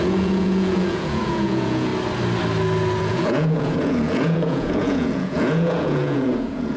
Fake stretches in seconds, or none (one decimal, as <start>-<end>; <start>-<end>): 0.0-1.9; 3.0-6.8